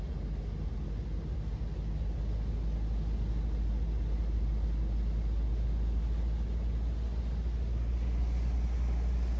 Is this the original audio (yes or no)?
yes